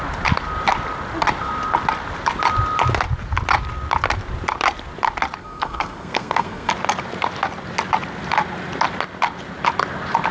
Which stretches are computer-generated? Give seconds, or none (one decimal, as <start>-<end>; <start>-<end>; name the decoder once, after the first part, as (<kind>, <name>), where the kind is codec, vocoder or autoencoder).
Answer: 5.4-6.7 (codec, SNAC)